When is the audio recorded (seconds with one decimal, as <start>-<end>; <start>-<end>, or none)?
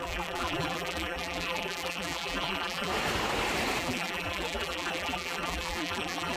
2.9-3.8